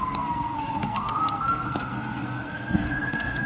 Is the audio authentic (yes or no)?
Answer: no